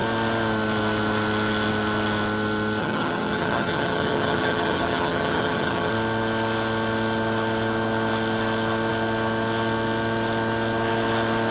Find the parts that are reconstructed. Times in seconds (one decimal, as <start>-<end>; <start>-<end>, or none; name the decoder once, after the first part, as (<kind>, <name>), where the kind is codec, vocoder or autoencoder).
2.8-5.9 (vocoder, HiFi-GAN)